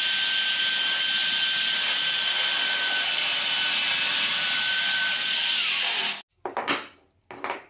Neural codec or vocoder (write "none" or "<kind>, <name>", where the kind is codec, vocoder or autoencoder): none